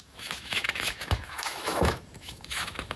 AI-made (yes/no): yes